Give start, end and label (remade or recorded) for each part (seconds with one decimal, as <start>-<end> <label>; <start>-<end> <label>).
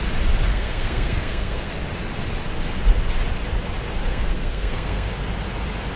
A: 0.0-0.5 recorded; 0.5-1.7 remade; 1.7-4.1 recorded; 4.1-5.1 remade; 5.1-6.0 recorded